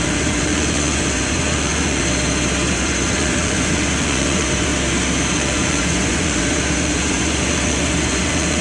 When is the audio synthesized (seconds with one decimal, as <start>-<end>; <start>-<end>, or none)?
0.0-2.0; 2.7-4.7; 5.3-8.6